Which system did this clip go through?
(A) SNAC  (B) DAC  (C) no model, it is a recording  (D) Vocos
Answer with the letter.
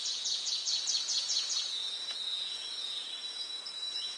D